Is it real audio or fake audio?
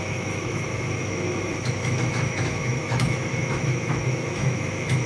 fake